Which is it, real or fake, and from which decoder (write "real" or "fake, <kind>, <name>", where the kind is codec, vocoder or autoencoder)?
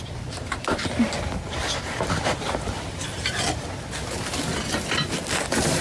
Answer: real